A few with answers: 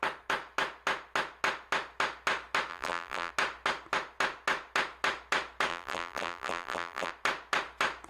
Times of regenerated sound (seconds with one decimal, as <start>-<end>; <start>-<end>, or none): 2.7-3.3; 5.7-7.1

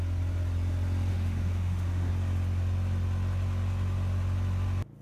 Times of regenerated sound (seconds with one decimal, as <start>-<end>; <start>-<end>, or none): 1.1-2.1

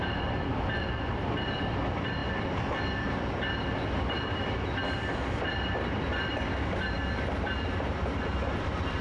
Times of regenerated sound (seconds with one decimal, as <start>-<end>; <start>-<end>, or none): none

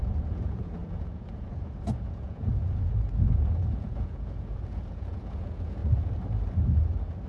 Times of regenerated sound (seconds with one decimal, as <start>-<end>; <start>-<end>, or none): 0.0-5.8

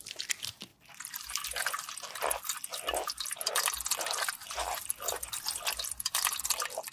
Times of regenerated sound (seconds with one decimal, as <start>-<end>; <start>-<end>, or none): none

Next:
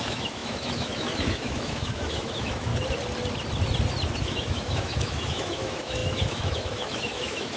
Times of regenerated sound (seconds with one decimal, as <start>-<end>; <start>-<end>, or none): 0.0-2.7; 4.2-7.6